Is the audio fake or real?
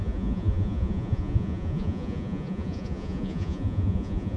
fake